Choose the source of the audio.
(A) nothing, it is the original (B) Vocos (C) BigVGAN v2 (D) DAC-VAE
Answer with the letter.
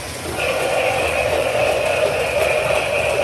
B